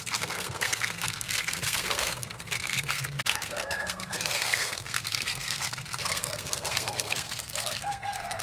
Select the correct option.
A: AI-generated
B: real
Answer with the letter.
A